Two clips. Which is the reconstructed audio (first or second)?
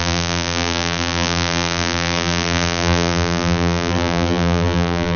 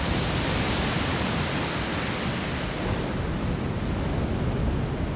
first